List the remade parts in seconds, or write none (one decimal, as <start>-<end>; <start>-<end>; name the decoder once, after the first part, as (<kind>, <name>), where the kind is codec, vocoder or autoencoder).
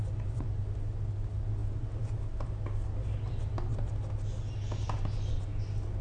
none